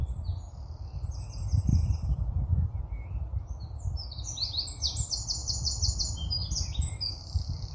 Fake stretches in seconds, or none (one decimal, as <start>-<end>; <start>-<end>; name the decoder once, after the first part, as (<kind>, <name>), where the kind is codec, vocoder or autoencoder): 1.7-2.8 (vocoder, BigVGAN v2); 6.4-7.1